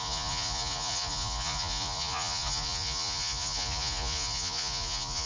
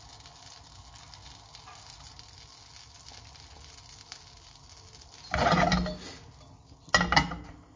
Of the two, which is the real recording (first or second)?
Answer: second